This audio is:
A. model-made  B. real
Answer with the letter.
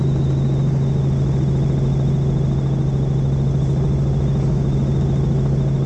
B